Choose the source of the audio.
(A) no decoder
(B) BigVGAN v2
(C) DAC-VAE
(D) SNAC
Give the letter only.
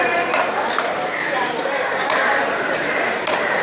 B